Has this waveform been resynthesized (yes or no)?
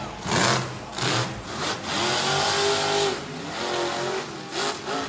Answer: no